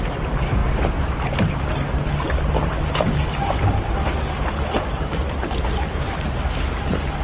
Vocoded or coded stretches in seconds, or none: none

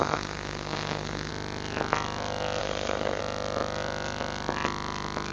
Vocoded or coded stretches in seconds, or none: 0.0-1.3 (codec, SNAC); 2.6-3.2